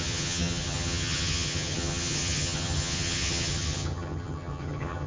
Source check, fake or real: fake